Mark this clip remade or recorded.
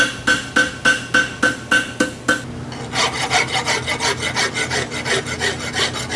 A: recorded